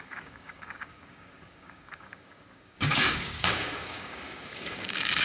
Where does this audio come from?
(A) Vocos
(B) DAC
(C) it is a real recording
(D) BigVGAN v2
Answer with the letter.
B